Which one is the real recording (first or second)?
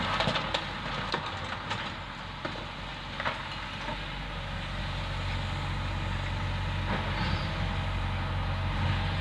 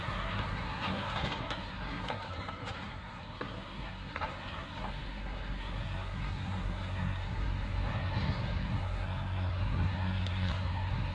first